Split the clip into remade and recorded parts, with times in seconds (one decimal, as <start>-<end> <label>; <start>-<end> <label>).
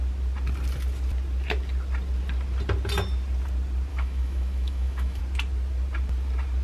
0.0-3.9 recorded; 3.9-5.2 remade; 5.2-6.6 recorded